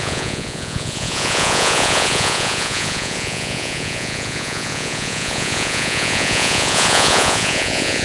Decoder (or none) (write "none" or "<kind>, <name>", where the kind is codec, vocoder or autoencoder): vocoder, Vocos